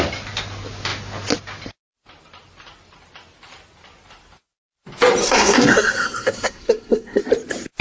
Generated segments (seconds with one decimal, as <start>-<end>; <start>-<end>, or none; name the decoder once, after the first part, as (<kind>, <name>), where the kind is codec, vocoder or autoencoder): 5.2-7.2 (codec, SNAC)